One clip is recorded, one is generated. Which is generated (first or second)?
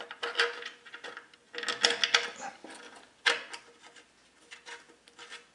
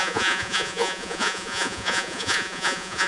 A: second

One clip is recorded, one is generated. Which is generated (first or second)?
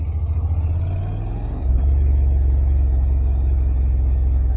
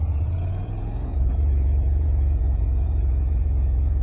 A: second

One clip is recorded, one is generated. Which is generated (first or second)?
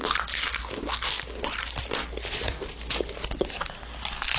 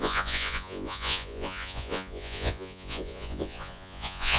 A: second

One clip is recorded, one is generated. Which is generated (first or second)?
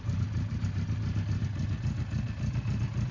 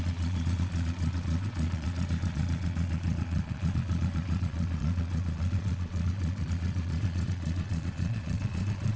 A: second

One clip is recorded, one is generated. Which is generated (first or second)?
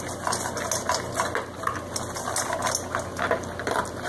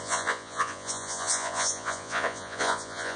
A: second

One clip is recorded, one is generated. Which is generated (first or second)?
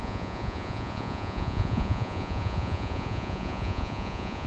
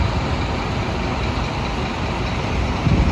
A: first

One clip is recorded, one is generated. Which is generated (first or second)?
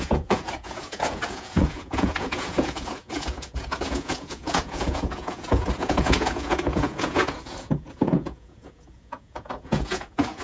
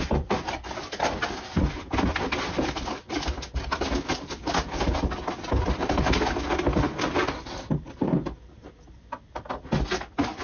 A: first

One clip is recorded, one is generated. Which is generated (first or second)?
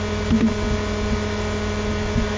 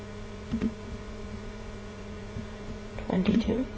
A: second